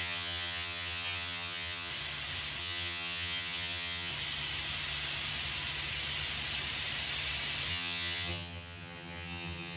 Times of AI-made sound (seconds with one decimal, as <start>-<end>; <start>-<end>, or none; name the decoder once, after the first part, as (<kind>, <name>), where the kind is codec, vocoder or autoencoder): 0.0-1.9 (vocoder, HiFi-GAN); 2.6-4.1; 7.7-9.8

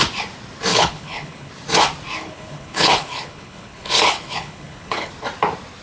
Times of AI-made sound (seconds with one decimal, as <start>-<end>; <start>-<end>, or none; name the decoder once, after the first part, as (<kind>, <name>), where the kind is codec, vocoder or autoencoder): 0.7-1.5 (codec, HILCodec); 2.2-5.1

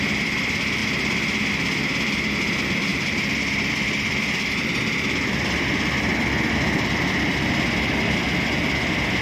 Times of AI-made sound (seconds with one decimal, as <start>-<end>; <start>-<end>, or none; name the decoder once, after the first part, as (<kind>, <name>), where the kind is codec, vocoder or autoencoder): 2.9-7.7 (vocoder, BigVGAN v2)